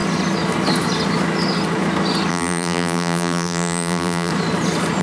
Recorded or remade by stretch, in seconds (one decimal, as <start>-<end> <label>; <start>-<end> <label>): 0.0-2.3 recorded; 2.3-4.3 remade; 4.3-5.0 recorded